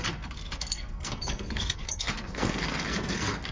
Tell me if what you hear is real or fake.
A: fake